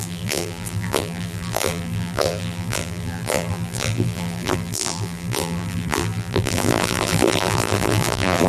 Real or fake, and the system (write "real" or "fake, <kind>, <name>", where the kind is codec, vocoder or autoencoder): fake, vocoder, BigVGAN v2